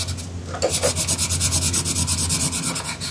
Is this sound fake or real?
real